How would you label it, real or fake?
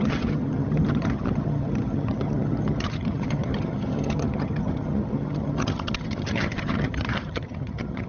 fake